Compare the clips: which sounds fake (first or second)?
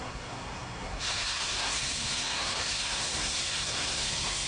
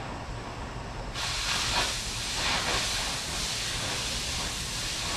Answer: first